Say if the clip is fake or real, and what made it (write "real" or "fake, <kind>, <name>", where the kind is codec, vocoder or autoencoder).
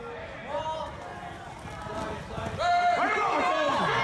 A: real